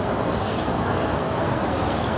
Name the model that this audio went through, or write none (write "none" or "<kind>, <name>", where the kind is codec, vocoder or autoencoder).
codec, SNAC